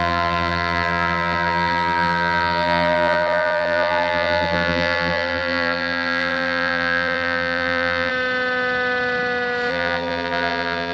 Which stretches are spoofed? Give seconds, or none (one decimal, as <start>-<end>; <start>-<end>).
0.0-8.1; 9.7-10.9